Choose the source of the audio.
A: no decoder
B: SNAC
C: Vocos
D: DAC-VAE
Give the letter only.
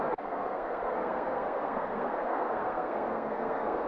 B